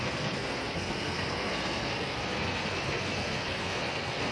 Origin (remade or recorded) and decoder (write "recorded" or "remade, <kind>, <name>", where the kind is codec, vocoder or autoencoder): remade, codec, SNAC